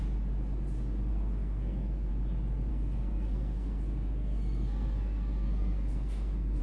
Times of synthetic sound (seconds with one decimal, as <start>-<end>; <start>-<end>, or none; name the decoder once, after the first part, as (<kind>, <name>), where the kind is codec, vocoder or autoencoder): 1.1-2.1 (codec, SNAC); 2.7-6.6